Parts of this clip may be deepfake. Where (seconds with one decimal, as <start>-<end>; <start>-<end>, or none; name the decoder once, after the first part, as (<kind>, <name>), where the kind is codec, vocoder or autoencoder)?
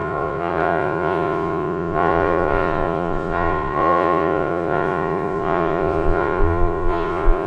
0.0-7.5 (vocoder, Vocos)